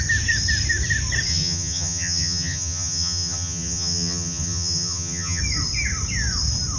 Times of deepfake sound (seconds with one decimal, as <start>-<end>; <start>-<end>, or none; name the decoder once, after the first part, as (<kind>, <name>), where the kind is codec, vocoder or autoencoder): 1.3-5.4 (vocoder, HiFi-GAN)